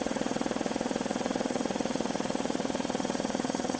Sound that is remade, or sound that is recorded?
remade